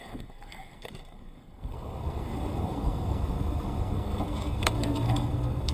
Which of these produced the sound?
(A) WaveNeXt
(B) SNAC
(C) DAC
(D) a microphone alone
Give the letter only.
B